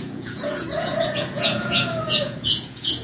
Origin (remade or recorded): remade